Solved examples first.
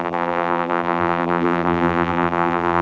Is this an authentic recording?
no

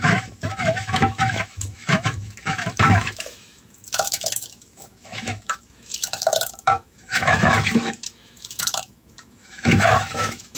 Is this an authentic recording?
no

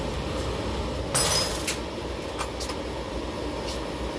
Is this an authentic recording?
yes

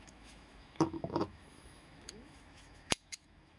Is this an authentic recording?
no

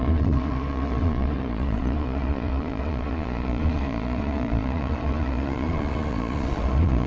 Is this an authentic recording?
no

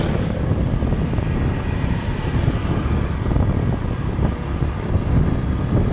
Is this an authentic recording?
yes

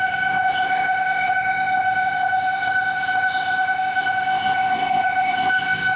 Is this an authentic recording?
no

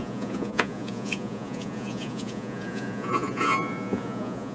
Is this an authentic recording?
no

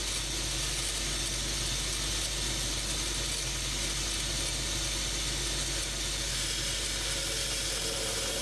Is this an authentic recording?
yes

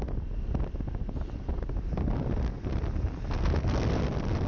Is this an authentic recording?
yes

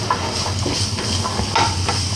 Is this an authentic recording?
yes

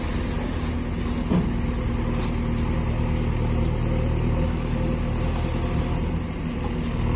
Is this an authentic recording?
yes